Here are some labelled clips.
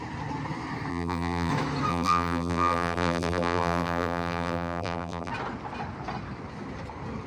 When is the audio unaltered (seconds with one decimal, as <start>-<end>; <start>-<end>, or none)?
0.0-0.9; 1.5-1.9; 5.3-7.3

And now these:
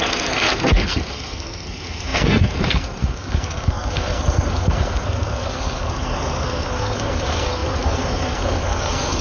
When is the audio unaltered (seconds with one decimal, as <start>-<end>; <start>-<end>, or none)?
none

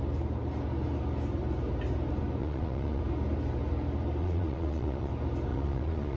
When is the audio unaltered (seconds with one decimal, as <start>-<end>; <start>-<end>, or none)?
0.0-2.4; 3.0-4.2; 5.1-5.5

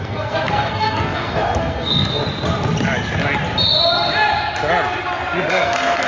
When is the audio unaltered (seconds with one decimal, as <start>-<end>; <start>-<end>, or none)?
2.2-5.5

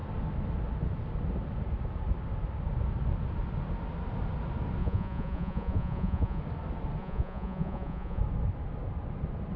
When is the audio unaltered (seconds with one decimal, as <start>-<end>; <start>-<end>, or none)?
0.0-4.8; 6.4-7.0; 8.2-9.6

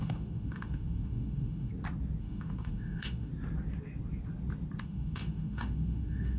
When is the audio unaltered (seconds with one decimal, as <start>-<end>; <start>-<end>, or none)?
1.7-2.2; 3.3-4.8

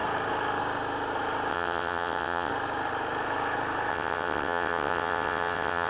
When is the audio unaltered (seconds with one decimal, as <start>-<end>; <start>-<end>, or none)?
0.0-1.5; 2.5-3.9